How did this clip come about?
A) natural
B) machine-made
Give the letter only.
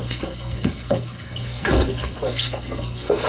B